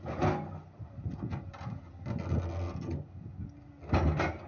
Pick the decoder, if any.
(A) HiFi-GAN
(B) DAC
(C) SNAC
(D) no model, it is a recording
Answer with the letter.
D